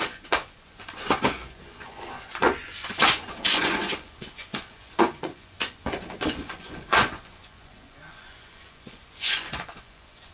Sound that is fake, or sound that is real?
fake